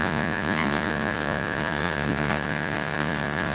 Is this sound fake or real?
fake